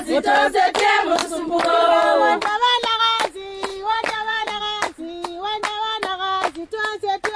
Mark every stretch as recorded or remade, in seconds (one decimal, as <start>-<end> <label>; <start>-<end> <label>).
0.0-3.7 recorded; 3.7-4.6 remade; 4.6-7.4 recorded

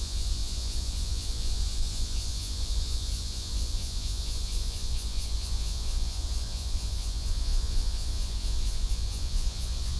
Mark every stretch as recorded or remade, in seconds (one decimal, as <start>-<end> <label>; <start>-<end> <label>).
0.0-10.0 remade

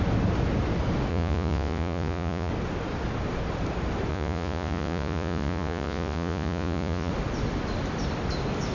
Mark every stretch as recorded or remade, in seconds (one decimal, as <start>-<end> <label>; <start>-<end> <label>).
0.0-1.1 recorded; 1.1-2.5 remade; 2.5-4.1 recorded; 4.1-7.1 remade; 7.1-8.7 recorded

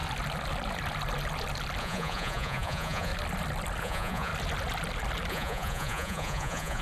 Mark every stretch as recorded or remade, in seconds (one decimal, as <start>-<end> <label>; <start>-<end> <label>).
0.0-1.8 recorded; 1.8-3.1 remade; 3.1-3.8 recorded; 3.8-4.3 remade; 4.3-5.3 recorded; 5.3-6.8 remade